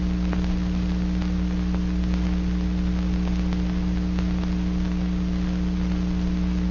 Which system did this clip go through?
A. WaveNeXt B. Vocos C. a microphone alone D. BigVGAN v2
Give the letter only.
C